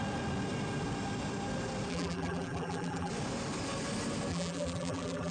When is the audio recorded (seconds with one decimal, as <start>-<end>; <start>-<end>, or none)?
0.0-1.9; 3.1-4.3